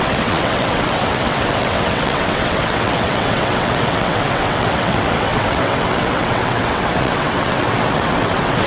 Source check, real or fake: fake